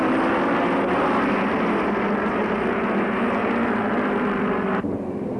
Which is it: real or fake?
real